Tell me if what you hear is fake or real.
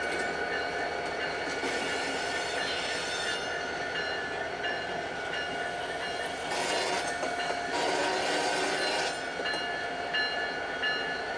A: real